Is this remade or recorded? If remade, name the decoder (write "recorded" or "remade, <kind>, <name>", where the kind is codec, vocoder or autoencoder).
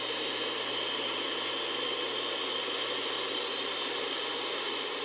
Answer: recorded